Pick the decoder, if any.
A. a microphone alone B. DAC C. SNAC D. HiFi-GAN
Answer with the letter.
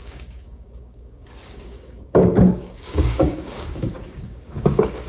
B